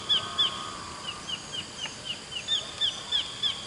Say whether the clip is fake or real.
real